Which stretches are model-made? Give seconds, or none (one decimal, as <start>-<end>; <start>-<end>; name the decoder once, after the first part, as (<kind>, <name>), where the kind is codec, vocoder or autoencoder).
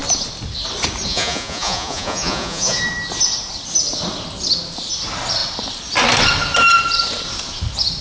1.1-2.8 (vocoder, Vocos)